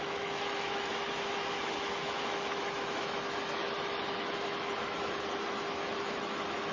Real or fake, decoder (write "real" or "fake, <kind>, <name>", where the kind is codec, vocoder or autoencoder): fake, autoencoder, DAC-VAE